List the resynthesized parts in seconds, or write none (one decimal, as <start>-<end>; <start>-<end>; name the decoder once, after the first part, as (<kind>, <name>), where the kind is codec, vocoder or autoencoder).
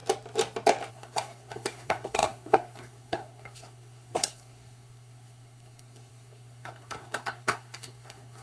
0.9-8.4 (codec, SNAC)